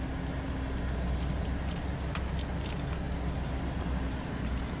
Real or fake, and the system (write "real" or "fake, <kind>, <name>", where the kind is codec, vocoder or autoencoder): real